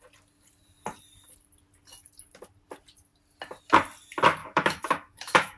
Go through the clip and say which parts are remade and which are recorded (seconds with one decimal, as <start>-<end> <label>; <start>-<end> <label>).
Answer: 0.0-4.4 recorded; 4.4-5.6 remade